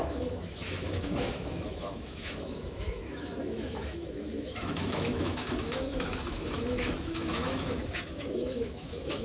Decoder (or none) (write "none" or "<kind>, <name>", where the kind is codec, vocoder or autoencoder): autoencoder, DAC-VAE